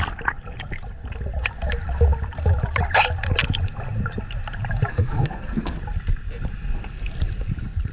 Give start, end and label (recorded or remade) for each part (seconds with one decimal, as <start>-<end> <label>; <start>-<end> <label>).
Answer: 0.0-4.9 recorded; 4.9-5.8 remade; 5.8-7.9 recorded